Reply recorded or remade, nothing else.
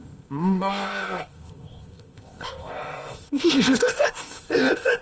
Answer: remade